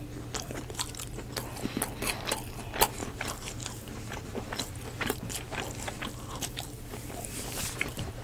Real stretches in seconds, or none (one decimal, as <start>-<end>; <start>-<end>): 0.0-3.0